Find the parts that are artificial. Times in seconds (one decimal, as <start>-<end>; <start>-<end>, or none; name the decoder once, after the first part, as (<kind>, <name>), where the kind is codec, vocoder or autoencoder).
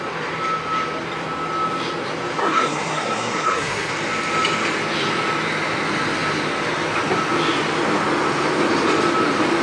2.4-3.9 (codec, SNAC)